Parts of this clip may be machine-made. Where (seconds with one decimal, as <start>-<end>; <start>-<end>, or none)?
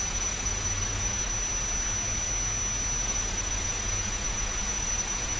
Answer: 0.0-1.3; 3.0-5.4